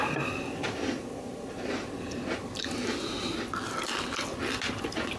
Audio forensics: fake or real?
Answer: real